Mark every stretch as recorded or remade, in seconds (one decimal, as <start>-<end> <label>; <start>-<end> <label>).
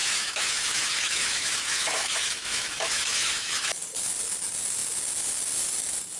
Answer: 0.0-3.7 remade; 3.7-6.2 recorded